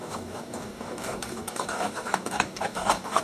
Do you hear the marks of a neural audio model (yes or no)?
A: yes